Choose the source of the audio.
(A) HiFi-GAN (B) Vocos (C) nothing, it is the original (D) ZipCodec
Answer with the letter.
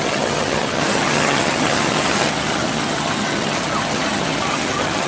A